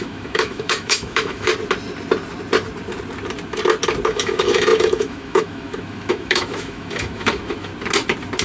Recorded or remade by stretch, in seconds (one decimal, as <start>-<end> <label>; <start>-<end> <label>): 0.0-1.5 remade; 1.5-4.1 recorded; 4.1-7.7 remade; 7.7-8.4 recorded